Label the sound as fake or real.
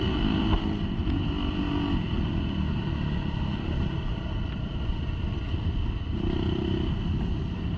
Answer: real